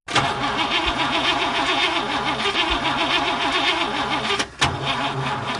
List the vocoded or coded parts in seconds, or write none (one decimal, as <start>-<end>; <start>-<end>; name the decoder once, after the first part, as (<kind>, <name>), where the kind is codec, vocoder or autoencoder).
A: 0.9-1.8 (vocoder, Vocos)